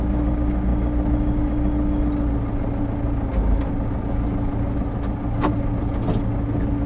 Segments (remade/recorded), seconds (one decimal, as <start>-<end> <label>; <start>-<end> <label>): 0.0-6.9 recorded